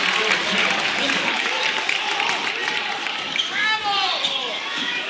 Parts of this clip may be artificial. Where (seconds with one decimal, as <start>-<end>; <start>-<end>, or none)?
0.4-1.6; 3.0-3.8; 4.4-5.1